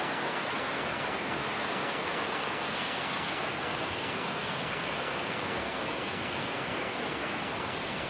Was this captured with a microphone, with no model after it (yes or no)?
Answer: no